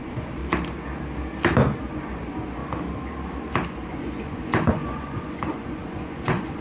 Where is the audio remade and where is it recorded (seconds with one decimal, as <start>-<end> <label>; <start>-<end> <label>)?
0.0-0.4 remade; 0.4-1.9 recorded; 1.9-2.6 remade; 2.6-3.7 recorded; 3.7-6.6 remade